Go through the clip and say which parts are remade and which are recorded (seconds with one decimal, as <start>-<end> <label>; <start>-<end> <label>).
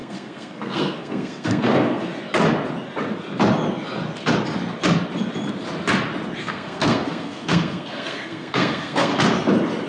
0.0-2.1 remade; 2.1-6.4 recorded; 6.4-9.1 remade; 9.1-9.9 recorded